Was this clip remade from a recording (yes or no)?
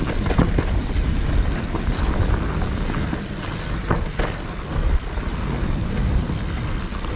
no